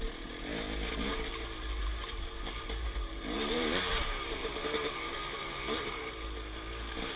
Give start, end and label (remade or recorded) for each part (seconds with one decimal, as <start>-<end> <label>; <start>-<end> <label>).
0.0-1.8 recorded; 1.8-6.0 remade; 6.0-7.2 recorded